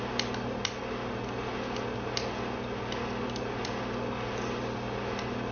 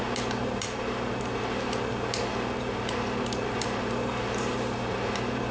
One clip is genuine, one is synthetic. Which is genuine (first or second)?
first